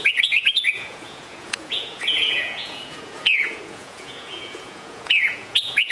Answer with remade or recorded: remade